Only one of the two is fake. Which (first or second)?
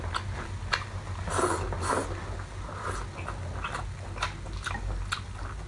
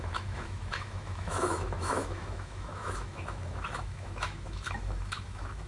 second